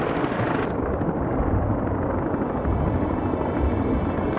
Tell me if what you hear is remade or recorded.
recorded